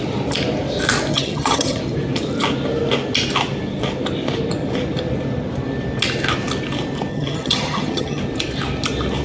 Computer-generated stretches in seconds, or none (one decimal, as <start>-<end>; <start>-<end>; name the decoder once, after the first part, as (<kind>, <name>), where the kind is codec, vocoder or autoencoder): 1.1-1.8 (vocoder, HiFi-GAN); 7.1-8.2